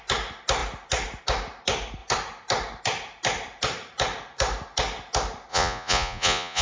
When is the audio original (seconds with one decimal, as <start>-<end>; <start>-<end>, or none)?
0.0-5.5